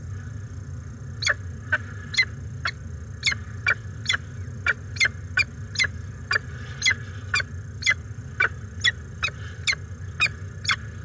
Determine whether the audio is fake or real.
real